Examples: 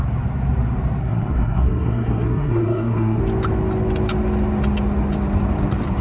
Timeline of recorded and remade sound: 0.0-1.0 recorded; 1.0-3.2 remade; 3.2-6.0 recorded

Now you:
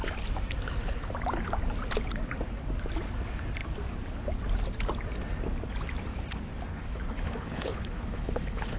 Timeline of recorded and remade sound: 0.0-6.7 recorded; 6.7-8.8 remade

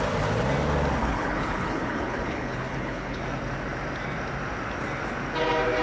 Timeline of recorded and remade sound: 0.0-1.0 recorded; 1.0-3.2 remade; 3.2-5.8 recorded

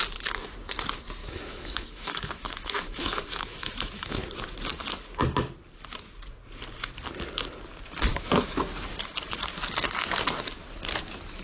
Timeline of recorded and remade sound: 0.0-1.2 recorded; 1.2-4.2 remade; 4.2-8.1 recorded; 8.1-8.6 remade; 8.6-11.4 recorded

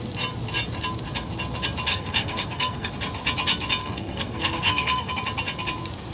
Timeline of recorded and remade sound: 0.0-1.9 recorded; 1.9-2.9 remade; 2.9-3.8 recorded; 3.8-5.1 remade; 5.1-6.1 recorded

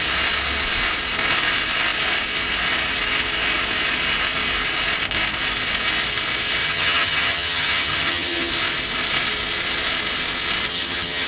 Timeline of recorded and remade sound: 0.0-6.6 recorded; 6.6-8.5 remade; 8.5-10.7 recorded; 10.7-11.3 remade

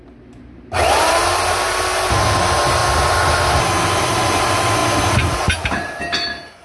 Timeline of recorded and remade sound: 0.0-6.6 recorded